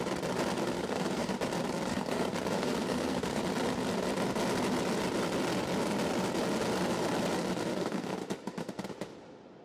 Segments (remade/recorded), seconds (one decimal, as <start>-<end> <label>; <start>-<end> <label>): 0.0-0.8 recorded; 0.8-1.3 remade; 1.3-1.9 recorded; 1.9-3.4 remade; 3.4-7.7 recorded; 7.7-8.9 remade; 8.9-9.6 recorded